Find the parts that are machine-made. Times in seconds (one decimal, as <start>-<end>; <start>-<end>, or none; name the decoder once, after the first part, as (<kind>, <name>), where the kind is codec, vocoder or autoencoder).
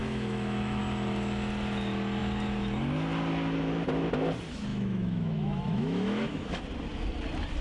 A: 0.0-0.8 (autoencoder, DAC-VAE); 4.7-6.6